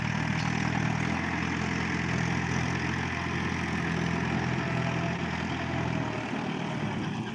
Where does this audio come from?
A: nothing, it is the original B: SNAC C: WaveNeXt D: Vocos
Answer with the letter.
A